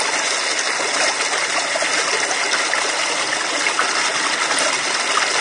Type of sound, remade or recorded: recorded